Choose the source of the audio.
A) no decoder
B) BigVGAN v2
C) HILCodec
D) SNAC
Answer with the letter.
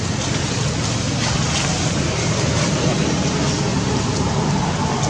A